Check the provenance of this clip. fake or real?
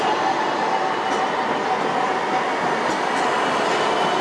real